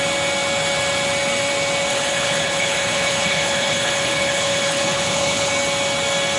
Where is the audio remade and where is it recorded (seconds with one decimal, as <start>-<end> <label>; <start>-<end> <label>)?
0.0-1.9 recorded; 1.9-5.5 remade; 5.5-6.4 recorded